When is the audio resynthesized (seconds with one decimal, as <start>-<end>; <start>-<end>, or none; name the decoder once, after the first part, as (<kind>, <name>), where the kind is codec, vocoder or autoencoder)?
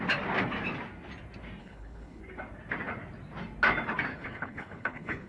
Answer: 1.6-2.2 (codec, HILCodec); 4.1-5.3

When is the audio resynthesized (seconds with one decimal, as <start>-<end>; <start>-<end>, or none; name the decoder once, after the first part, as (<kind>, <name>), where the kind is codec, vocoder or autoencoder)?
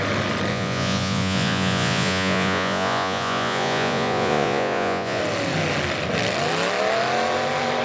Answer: 0.5-5.2 (vocoder, Vocos)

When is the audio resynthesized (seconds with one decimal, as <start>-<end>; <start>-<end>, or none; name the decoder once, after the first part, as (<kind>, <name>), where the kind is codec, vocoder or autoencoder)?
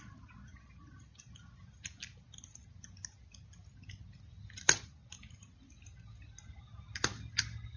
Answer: none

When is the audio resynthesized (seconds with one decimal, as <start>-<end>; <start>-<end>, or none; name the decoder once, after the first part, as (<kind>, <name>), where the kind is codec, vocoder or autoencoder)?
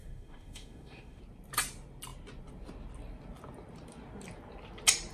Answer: 0.0-1.2 (autoencoder, DAC-VAE)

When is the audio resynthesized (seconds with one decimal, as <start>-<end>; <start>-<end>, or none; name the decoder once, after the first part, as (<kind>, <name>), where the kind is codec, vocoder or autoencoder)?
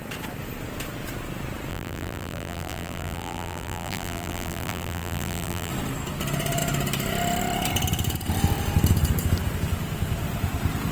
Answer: 1.7-5.7 (vocoder, BigVGAN v2)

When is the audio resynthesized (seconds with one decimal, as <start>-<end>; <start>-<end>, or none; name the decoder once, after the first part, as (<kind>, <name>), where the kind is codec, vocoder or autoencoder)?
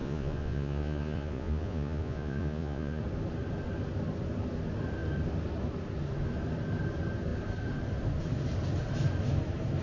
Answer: 0.0-3.0 (vocoder, Vocos)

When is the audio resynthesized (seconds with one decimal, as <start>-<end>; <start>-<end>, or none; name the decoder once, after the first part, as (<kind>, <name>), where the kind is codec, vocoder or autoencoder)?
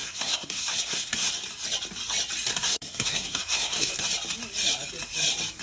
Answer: 0.0-1.3 (codec, SNAC); 2.5-4.0